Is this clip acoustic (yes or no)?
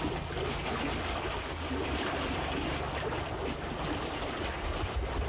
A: yes